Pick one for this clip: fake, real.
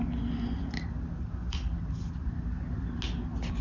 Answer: real